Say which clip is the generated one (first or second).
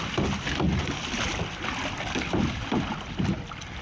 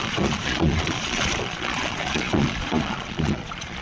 second